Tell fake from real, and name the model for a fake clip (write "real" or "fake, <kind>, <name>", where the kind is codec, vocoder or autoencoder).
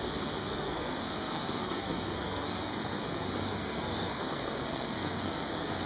fake, codec, SNAC